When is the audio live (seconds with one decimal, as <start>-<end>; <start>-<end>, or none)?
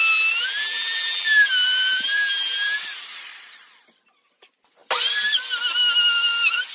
2.8-6.7